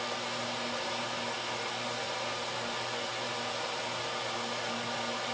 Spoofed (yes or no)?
no